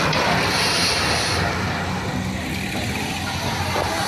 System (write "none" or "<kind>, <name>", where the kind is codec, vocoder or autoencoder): none